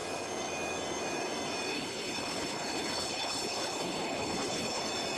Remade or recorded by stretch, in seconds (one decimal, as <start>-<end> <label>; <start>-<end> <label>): 0.0-1.7 recorded; 1.7-4.8 remade; 4.8-5.2 recorded

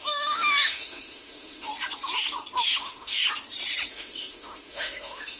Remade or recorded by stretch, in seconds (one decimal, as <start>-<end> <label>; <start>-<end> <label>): 0.0-1.7 remade; 1.7-2.8 recorded; 2.8-3.2 remade; 3.2-3.9 recorded; 3.9-5.4 remade

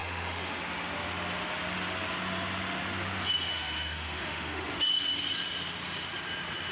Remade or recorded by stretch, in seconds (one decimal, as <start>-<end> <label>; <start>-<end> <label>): 0.0-0.6 remade; 0.6-3.5 recorded; 3.5-4.9 remade; 4.9-6.7 recorded

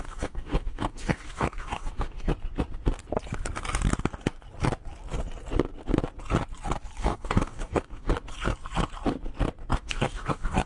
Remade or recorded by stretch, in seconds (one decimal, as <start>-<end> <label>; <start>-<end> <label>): 0.0-2.3 remade; 2.3-7.0 recorded; 7.0-8.1 remade; 8.1-9.7 recorded; 9.7-10.7 remade

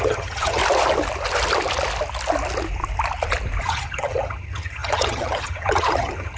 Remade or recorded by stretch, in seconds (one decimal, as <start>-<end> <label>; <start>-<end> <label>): 0.0-0.6 remade; 0.6-3.6 recorded; 3.6-6.4 remade